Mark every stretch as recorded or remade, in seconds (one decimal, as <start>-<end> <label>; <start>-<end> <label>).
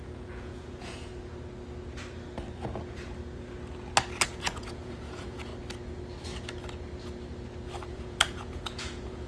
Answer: 0.0-1.1 remade; 1.1-4.3 recorded; 4.3-5.5 remade; 5.5-7.9 recorded; 7.9-9.3 remade